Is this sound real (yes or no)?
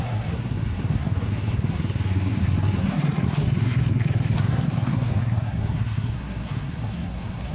no